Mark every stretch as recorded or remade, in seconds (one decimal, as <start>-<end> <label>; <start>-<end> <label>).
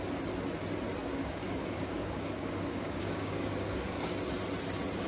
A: 0.0-1.0 recorded; 1.0-4.1 remade; 4.1-5.1 recorded